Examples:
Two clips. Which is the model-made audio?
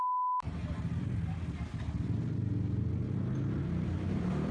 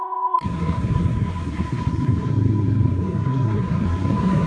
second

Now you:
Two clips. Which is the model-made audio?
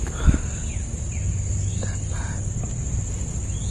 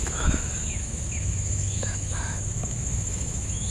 second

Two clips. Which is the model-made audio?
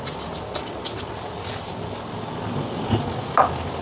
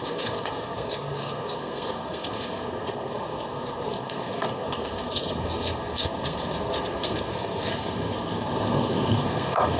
second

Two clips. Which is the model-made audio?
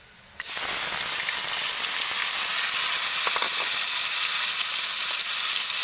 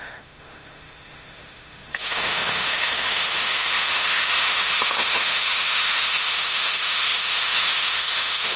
second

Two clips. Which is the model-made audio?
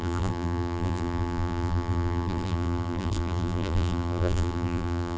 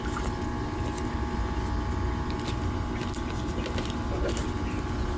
first